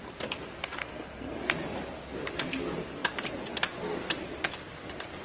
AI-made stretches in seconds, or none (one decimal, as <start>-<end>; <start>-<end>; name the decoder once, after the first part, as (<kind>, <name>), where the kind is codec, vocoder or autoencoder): 0.8-1.4 (codec, SNAC)